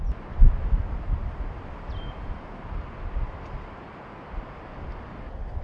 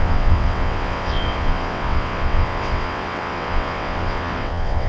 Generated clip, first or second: second